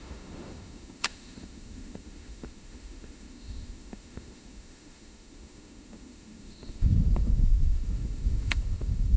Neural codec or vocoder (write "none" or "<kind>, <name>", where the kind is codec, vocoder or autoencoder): autoencoder, DAC-VAE